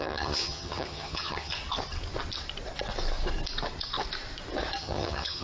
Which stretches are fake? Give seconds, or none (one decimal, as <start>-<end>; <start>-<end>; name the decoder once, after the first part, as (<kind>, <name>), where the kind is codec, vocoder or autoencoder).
0.0-1.6 (vocoder, HiFi-GAN); 4.8-5.4

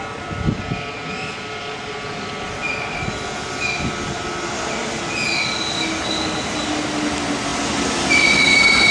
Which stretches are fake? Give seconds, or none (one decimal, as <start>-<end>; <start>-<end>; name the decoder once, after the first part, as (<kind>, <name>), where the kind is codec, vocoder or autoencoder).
none